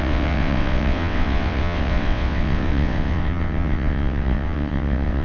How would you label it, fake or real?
fake